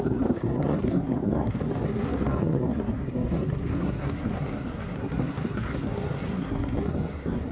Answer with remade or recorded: remade